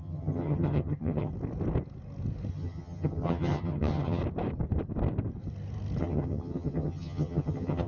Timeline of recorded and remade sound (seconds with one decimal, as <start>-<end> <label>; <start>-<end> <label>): 0.0-1.3 remade; 1.3-2.5 recorded; 2.5-4.2 remade; 4.2-6.0 recorded; 6.0-7.9 remade